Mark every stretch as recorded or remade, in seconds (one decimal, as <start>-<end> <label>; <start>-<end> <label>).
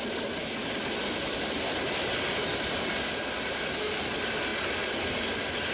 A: 0.0-5.7 recorded